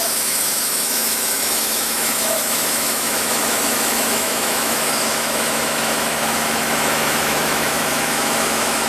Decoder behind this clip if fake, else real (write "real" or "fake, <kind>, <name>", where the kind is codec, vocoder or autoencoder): fake, autoencoder, DAC-VAE